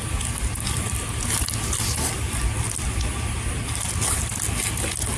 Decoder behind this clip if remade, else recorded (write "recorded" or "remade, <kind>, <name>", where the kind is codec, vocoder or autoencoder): recorded